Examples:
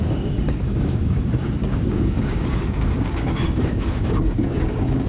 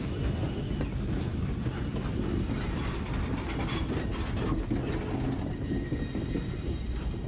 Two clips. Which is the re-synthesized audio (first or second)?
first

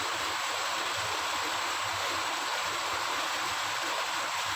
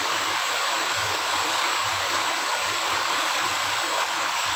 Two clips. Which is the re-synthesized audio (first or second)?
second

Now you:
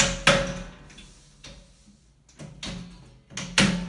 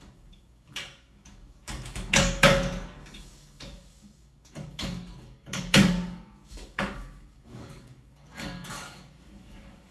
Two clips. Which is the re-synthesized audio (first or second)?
second